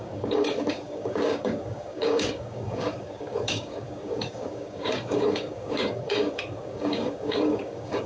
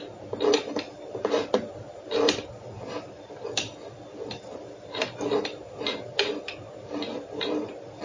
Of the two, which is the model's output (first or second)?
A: first